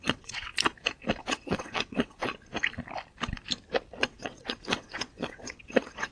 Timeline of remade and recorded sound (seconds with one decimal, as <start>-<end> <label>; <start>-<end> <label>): 0.0-0.5 remade; 0.5-1.2 recorded; 1.2-2.3 remade; 2.3-4.0 recorded; 4.0-6.1 remade